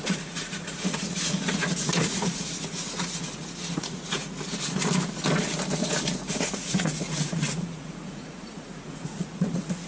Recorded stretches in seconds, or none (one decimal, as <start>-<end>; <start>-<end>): 4.2-6.3